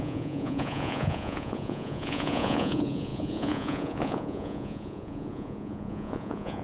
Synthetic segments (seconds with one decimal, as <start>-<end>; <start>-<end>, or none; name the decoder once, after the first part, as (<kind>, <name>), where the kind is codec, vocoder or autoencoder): 0.0-6.6 (vocoder, Vocos)